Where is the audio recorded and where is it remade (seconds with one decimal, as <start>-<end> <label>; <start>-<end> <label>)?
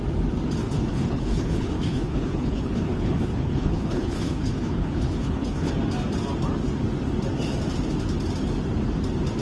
0.0-0.6 recorded; 0.6-5.7 remade; 5.7-9.4 recorded